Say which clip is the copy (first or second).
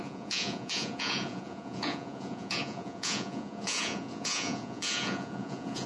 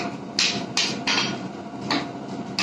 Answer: first